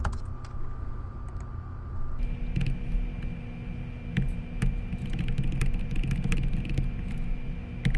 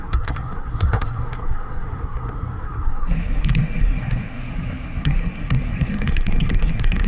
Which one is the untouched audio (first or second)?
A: first